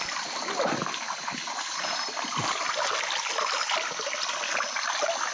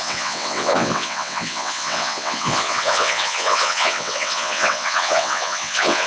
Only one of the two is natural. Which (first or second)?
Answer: first